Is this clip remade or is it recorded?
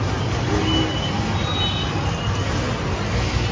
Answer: recorded